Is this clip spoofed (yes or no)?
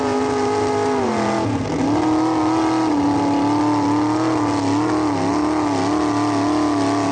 no